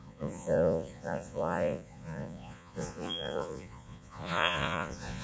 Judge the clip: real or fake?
fake